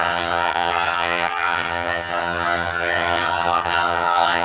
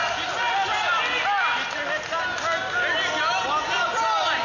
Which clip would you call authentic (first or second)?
second